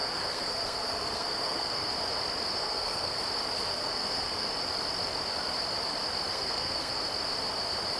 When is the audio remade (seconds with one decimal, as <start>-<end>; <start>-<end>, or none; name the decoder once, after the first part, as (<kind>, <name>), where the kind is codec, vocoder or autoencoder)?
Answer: 0.0-1.9 (codec, SNAC); 2.6-3.2; 3.7-4.5; 6.3-7.0